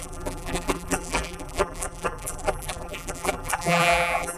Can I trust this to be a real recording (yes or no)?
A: no